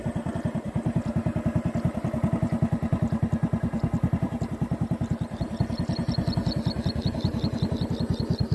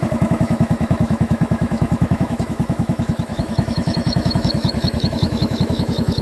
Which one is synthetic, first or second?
second